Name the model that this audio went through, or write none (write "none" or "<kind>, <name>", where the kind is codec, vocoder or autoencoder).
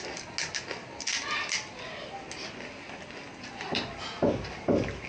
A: none